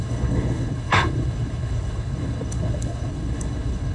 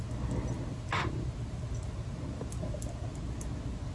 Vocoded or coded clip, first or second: first